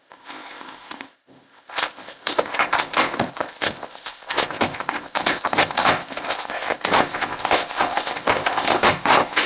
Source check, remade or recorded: remade